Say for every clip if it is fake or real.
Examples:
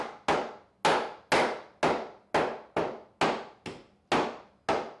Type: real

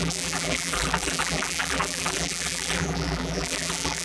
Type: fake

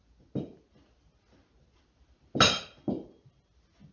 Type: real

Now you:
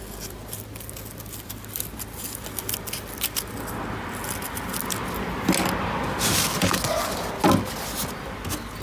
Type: real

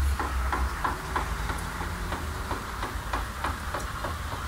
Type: real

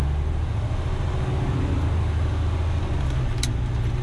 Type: real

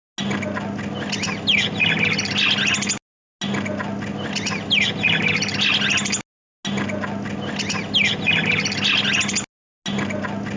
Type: real